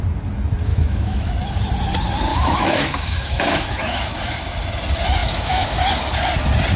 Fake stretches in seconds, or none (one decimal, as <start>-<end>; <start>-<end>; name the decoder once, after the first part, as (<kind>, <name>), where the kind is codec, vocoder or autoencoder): 0.7-1.3 (autoencoder, DAC-VAE); 2.3-4.1; 5.2-5.8